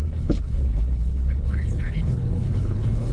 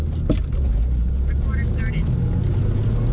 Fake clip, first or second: first